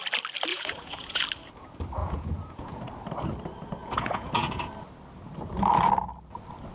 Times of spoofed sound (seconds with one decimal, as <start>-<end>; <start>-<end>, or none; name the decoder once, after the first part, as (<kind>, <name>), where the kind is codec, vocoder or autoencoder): 0.5-1.2 (vocoder, Vocos); 2.0-2.8; 3.8-4.7